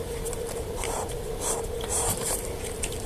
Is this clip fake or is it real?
fake